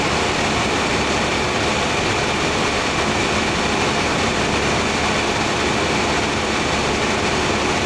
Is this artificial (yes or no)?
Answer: no